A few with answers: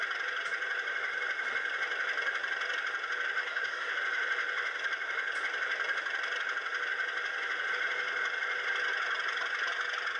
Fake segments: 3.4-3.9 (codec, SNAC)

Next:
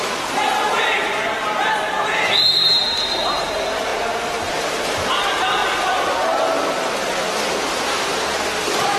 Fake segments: 0.0-2.8 (vocoder, BigVGAN v2); 3.4-3.9; 4.6-5.6; 8.6-9.0

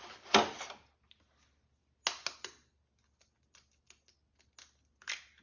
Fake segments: none